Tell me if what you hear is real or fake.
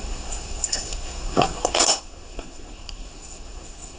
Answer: fake